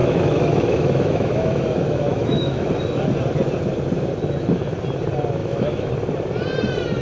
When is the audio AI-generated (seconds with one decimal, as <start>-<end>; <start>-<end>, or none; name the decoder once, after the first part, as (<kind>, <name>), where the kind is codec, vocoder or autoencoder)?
0.0-2.7 (autoencoder, DAC-VAE); 5.4-5.9